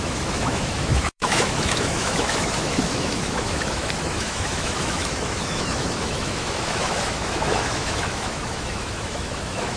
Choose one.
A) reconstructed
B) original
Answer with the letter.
A